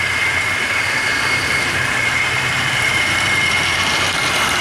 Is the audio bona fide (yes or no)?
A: no